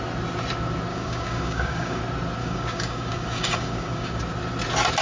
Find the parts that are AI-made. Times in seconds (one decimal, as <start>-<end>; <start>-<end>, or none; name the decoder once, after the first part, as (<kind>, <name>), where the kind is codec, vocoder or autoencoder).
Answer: 0.9-2.0 (codec, DAC); 2.4-4.2